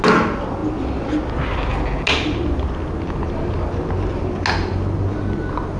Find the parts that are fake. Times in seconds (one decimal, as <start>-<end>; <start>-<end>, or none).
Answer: none

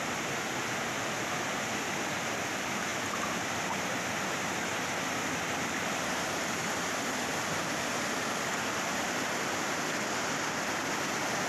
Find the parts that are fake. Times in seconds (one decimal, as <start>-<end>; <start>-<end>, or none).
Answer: none